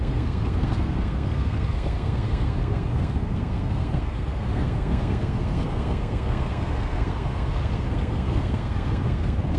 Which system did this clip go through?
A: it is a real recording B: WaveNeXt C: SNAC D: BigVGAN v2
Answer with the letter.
C